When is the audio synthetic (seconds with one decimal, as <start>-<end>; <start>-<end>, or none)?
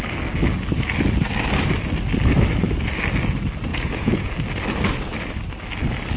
3.7-4.3